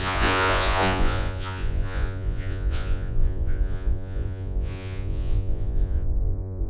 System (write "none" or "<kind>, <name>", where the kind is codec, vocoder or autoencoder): vocoder, Vocos